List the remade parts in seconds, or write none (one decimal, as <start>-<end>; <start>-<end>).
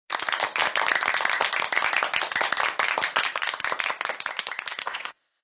4.8-5.4